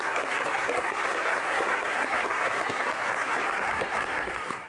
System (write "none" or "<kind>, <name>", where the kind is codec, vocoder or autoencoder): codec, SNAC